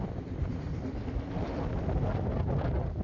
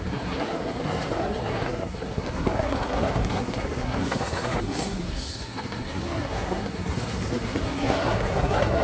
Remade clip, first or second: second